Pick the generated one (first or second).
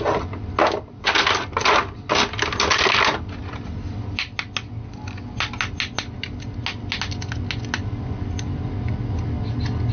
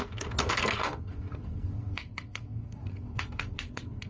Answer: second